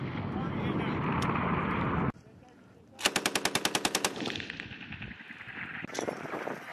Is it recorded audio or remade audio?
recorded